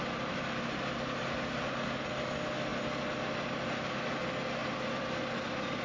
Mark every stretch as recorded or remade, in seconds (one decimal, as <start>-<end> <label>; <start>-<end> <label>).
0.0-5.8 recorded